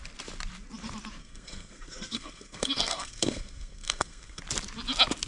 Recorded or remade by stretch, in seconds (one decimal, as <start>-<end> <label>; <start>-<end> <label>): 0.0-1.2 recorded; 1.2-4.4 remade; 4.4-5.3 recorded